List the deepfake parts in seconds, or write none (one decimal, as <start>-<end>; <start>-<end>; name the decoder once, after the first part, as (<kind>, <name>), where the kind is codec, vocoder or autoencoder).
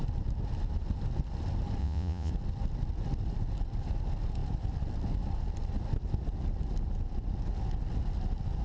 1.8-2.3 (vocoder, Vocos)